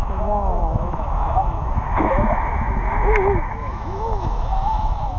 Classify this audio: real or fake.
fake